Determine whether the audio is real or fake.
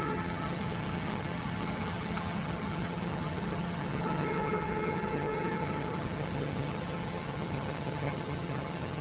fake